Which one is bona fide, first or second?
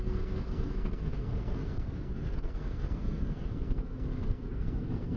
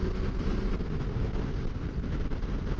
second